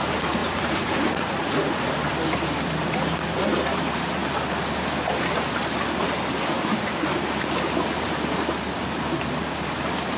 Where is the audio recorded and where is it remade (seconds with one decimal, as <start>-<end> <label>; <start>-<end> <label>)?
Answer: 0.0-0.4 recorded; 0.4-1.8 remade; 1.8-10.2 recorded